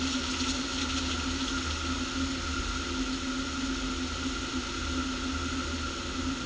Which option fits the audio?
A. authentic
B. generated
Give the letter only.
A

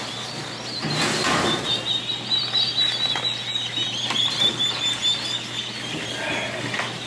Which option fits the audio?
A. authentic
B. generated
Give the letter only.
A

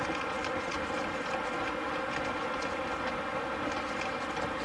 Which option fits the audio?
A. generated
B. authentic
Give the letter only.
B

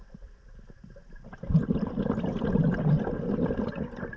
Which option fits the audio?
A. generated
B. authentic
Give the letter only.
B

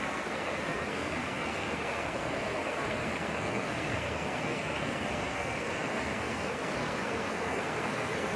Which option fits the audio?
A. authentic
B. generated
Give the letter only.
B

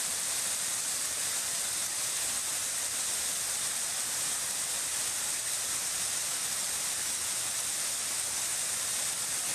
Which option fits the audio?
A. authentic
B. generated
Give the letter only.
A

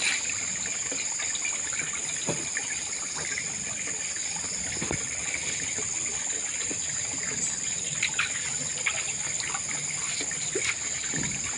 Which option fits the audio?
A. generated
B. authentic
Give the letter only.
B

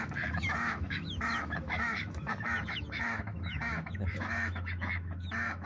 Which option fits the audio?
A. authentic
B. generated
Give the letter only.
B